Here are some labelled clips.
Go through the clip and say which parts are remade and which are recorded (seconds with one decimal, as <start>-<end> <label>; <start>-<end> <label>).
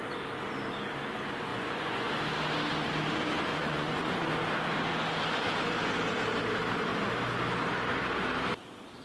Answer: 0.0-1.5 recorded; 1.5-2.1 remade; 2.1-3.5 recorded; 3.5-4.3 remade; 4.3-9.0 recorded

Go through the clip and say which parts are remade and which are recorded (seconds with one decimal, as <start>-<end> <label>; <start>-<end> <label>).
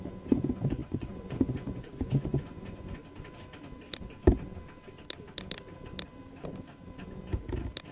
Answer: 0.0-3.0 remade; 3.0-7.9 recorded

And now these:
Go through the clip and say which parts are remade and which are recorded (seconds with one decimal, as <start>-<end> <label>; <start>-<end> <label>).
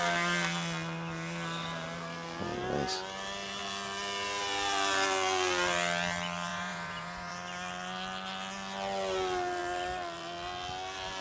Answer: 0.0-6.5 recorded; 6.5-7.3 remade; 7.3-11.2 recorded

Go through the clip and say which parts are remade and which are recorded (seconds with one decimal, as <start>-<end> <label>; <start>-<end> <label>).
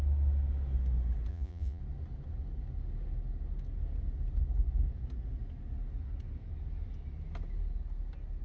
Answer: 0.0-1.3 recorded; 1.3-1.8 remade; 1.8-8.4 recorded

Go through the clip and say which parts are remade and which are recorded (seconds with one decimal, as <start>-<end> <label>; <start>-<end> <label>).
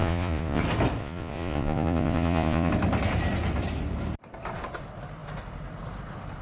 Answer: 0.0-0.6 remade; 0.6-1.0 recorded; 1.0-2.7 remade; 2.7-6.4 recorded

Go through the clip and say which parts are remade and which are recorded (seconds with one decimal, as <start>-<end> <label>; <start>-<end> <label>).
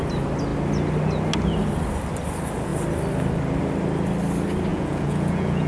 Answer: 0.0-4.7 recorded; 4.7-5.7 remade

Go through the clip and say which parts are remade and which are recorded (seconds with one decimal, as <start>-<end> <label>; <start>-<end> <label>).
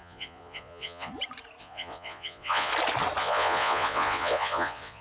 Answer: 0.0-1.1 remade; 1.1-1.6 recorded; 1.6-2.7 remade; 2.7-3.2 recorded; 3.2-5.0 remade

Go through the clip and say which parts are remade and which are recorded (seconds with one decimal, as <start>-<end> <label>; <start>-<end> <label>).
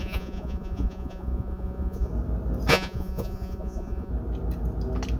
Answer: 0.0-2.1 remade; 2.1-2.7 recorded; 2.7-4.1 remade; 4.1-5.2 recorded